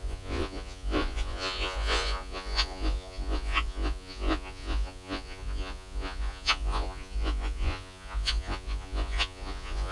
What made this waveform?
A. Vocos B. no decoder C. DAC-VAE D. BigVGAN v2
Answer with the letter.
A